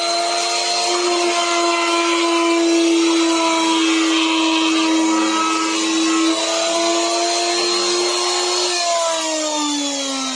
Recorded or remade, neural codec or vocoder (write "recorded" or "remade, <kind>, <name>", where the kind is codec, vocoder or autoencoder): recorded